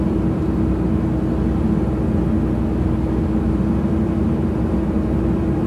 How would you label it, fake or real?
real